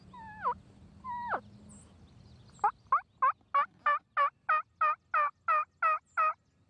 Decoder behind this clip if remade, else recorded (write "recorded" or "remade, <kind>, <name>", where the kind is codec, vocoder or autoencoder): recorded